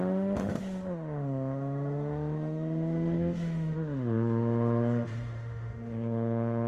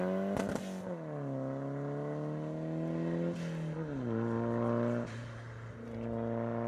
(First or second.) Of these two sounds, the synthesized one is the first